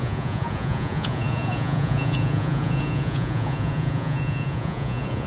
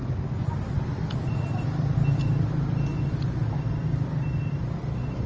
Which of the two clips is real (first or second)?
second